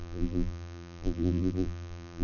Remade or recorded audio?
remade